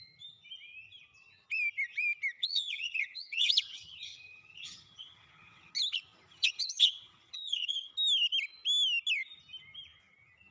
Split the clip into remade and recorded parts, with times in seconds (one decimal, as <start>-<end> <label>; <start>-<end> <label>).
0.0-2.4 recorded; 2.4-5.7 remade; 5.7-6.3 recorded; 6.3-7.9 remade; 7.9-10.5 recorded